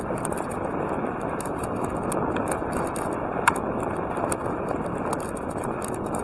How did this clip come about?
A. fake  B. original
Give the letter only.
B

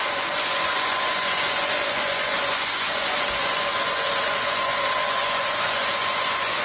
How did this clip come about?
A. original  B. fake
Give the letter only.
B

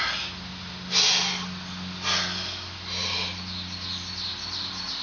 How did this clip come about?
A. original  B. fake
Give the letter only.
A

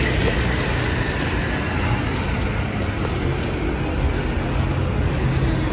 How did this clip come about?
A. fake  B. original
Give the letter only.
B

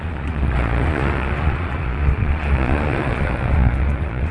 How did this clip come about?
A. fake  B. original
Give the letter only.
A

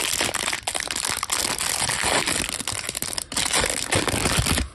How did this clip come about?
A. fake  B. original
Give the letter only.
B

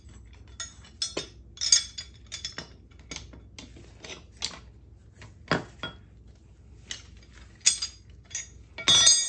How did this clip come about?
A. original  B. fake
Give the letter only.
A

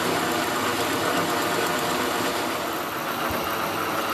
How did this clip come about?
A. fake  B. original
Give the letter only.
B